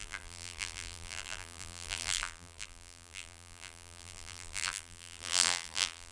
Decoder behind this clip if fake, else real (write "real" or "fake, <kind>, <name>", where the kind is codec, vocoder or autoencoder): fake, vocoder, BigVGAN v2